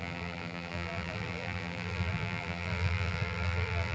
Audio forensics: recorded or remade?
remade